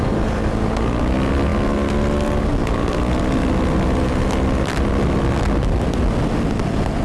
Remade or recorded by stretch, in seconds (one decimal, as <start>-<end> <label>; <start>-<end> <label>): 0.0-7.0 recorded